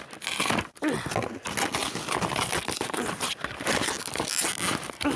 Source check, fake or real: real